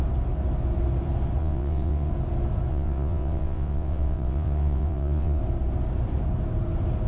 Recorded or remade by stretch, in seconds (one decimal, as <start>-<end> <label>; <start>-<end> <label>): 0.0-1.4 recorded; 1.4-2.1 remade; 2.1-2.7 recorded; 2.7-5.4 remade; 5.4-7.1 recorded